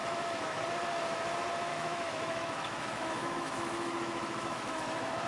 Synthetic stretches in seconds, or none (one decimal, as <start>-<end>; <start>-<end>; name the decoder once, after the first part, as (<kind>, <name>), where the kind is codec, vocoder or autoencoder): 0.0-0.6 (autoencoder, DAC-VAE); 1.7-5.3

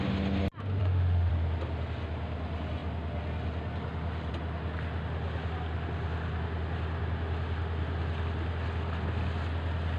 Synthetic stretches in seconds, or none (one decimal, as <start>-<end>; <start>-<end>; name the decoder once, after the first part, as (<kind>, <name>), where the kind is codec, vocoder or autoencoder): 0.8-1.3 (autoencoder, DAC-VAE)

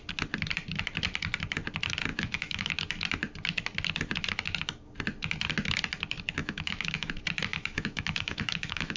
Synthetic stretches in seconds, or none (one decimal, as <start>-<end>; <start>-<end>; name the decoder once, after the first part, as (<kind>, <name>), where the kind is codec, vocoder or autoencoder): 2.1-2.7 (autoencoder, DAC-VAE); 6.4-7.1; 7.5-9.0

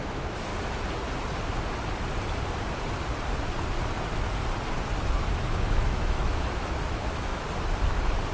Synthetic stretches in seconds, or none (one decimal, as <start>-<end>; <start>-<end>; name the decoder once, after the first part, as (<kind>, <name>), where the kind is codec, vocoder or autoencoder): 0.0-0.5 (autoencoder, DAC-VAE); 5.2-7.3

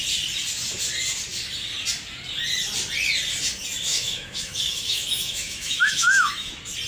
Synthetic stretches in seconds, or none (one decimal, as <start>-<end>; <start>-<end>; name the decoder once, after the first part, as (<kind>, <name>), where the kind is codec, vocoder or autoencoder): 3.9-6.5 (autoencoder, DAC-VAE)

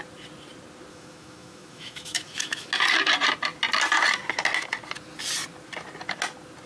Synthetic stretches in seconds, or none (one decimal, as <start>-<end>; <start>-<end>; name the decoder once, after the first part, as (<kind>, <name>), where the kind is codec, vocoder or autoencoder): 0.9-2.7 (autoencoder, DAC-VAE)

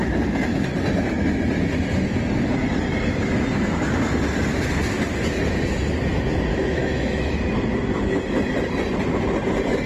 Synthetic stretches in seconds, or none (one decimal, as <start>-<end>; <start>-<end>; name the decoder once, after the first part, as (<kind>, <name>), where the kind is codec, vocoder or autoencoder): 6.5-7.3 (autoencoder, DAC-VAE)